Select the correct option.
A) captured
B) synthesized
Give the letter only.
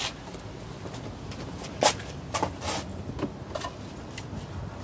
A